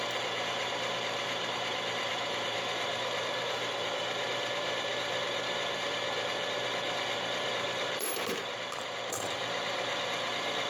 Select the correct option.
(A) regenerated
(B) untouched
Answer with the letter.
A